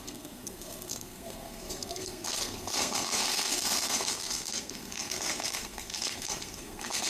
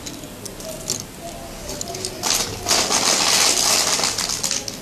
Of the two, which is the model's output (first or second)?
first